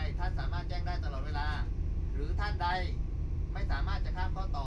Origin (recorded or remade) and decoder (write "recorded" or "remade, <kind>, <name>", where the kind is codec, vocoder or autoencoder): recorded